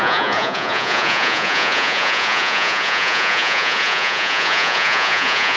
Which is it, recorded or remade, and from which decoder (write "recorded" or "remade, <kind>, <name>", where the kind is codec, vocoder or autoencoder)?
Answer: remade, vocoder, Vocos